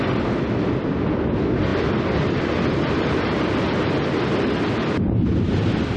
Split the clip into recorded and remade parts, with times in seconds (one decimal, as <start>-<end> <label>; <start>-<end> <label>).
0.0-6.0 recorded